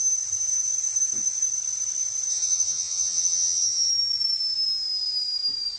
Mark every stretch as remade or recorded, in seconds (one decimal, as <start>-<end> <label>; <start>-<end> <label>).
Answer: 0.0-2.3 recorded; 2.3-3.9 remade; 3.9-5.8 recorded